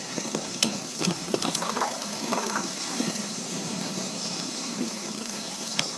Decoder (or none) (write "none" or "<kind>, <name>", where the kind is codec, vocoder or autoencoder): codec, SNAC